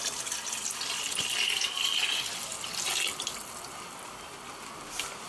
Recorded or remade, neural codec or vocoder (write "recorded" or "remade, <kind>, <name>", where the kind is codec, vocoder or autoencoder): recorded